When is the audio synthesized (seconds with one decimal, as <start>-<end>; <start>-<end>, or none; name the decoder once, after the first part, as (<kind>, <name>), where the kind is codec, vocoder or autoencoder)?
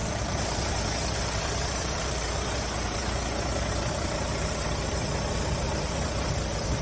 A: 0.0-3.0 (vocoder, BigVGAN v2); 3.9-6.8